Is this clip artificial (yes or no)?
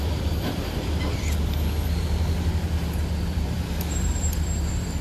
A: yes